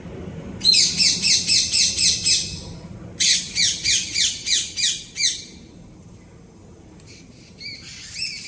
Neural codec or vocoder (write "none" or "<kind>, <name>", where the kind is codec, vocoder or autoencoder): none